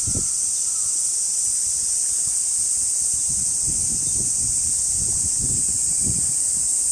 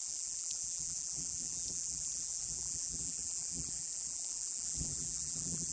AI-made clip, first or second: second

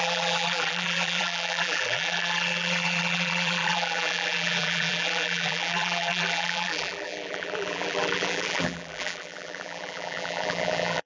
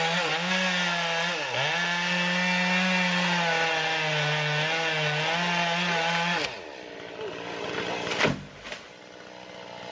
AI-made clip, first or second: first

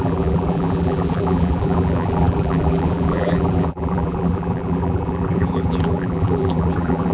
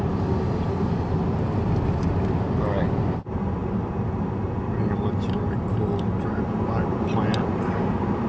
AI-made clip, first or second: first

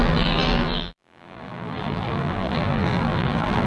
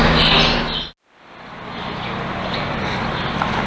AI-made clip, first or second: first